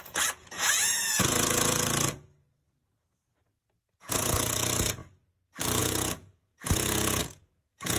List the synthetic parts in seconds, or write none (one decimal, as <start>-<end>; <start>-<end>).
0.0-5.0; 5.8-8.0